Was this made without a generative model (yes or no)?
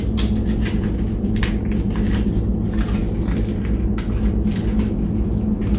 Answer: yes